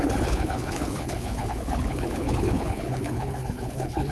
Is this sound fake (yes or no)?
yes